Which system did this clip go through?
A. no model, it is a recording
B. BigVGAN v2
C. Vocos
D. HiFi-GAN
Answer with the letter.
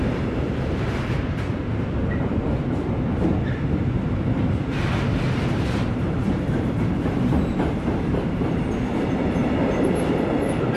B